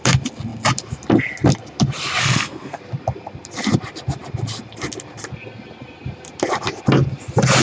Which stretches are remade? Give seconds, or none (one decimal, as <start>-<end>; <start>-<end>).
2.2-2.8